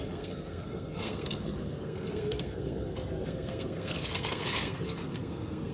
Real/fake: fake